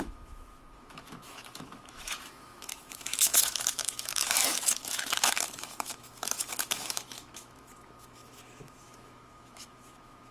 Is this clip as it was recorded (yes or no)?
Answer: no